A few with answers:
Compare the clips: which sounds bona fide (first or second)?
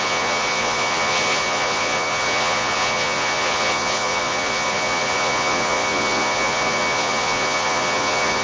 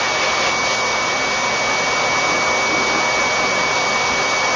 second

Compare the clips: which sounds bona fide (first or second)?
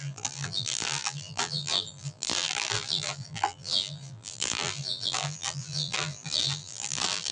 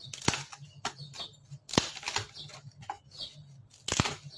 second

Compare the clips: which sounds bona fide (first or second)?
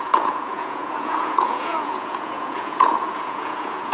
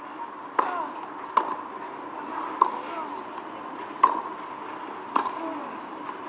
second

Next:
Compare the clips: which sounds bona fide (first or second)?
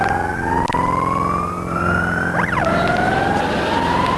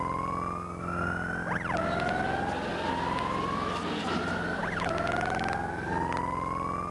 second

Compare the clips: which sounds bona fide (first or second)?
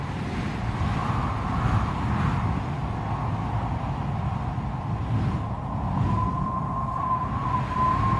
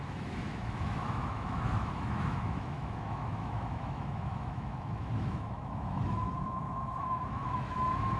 first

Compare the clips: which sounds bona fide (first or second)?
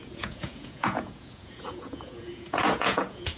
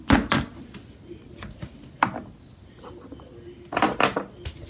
second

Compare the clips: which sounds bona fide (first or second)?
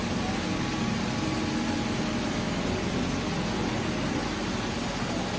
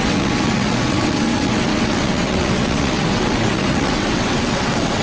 first